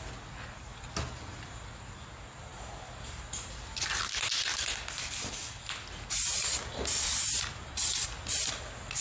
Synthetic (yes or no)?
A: no